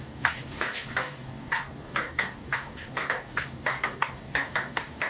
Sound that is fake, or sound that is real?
fake